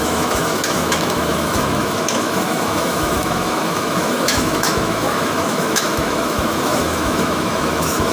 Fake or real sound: fake